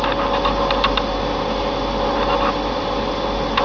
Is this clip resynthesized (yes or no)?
yes